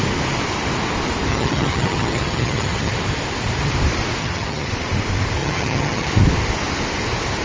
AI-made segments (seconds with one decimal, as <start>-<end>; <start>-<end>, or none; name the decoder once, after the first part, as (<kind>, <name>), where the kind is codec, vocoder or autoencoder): 1.3-2.9 (vocoder, HiFi-GAN); 4.2-4.7; 5.4-6.1